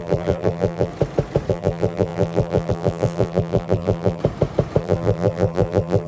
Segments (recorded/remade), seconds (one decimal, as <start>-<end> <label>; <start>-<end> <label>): 0.0-0.9 remade; 0.9-1.5 recorded; 1.5-4.2 remade; 4.2-4.8 recorded; 4.8-6.1 remade

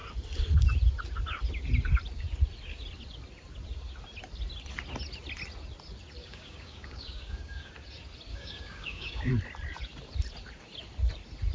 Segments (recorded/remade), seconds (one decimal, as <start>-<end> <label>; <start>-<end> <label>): 0.0-6.2 recorded; 6.2-7.7 remade; 7.7-8.3 recorded; 8.3-9.3 remade; 9.3-11.5 recorded

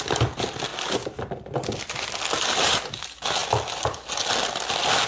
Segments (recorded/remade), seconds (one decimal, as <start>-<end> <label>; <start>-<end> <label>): 0.0-5.1 recorded

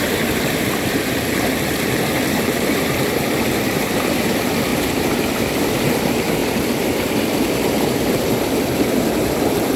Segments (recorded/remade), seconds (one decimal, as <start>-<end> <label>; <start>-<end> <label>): 0.0-9.8 remade

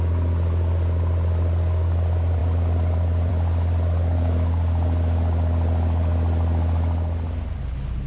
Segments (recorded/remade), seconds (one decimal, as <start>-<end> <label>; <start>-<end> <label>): 0.0-8.1 recorded